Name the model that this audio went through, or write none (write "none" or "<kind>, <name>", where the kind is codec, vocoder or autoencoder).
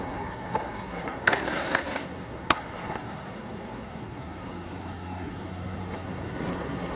codec, SNAC